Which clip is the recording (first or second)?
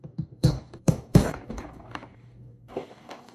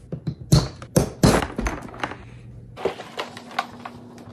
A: second